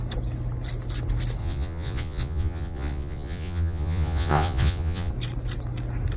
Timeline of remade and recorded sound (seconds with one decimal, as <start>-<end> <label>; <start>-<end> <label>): 0.0-1.4 recorded; 1.4-5.1 remade; 5.1-6.2 recorded